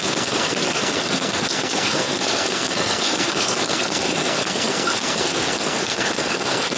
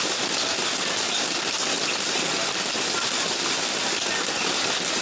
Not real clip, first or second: first